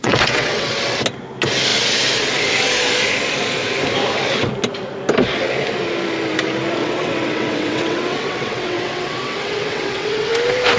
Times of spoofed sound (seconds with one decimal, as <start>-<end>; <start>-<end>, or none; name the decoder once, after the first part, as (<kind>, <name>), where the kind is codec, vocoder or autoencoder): 0.0-0.7 (vocoder, WaveNeXt); 6.8-10.3